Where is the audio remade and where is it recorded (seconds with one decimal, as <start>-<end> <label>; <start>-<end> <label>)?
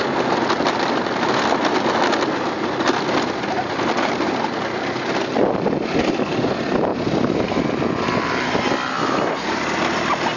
0.0-10.4 recorded